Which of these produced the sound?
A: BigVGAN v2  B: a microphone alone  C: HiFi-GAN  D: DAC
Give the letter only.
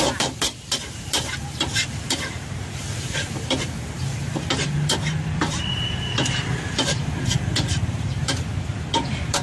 A